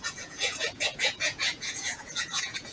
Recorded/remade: remade